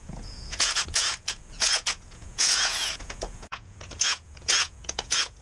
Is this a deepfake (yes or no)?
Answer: yes